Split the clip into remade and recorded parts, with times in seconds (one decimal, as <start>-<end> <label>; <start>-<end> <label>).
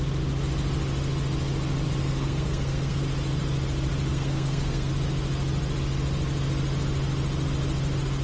0.0-2.0 recorded; 2.0-3.0 remade; 3.0-4.1 recorded; 4.1-4.9 remade; 4.9-8.2 recorded